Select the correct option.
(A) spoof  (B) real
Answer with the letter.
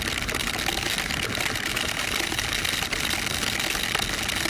B